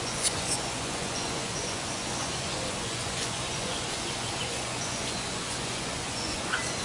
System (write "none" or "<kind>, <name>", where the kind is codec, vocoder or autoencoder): vocoder, Vocos